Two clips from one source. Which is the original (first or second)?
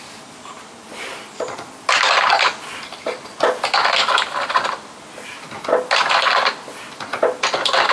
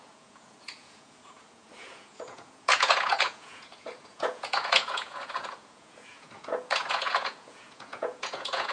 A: first